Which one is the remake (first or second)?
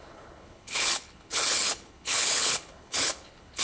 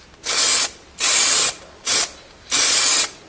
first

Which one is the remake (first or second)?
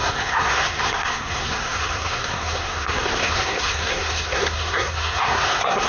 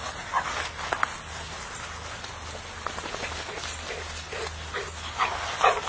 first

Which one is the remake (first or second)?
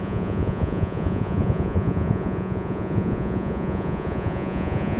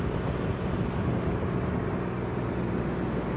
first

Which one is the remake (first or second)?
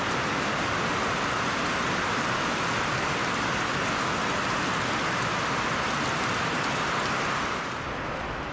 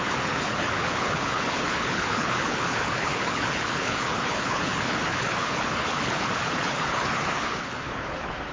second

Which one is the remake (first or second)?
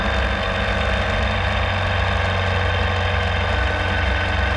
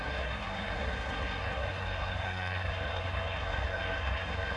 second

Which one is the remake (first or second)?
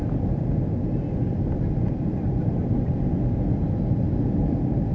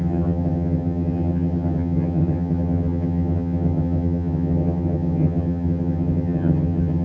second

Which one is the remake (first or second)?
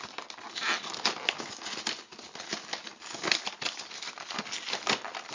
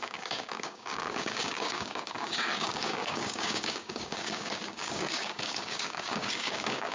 second